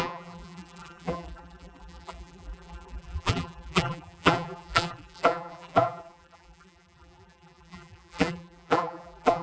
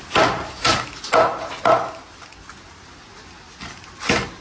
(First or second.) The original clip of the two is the second